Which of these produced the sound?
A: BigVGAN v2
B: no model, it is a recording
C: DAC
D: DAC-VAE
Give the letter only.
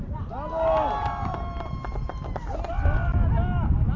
B